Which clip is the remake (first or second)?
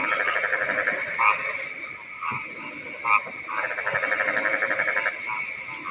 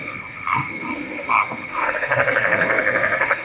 second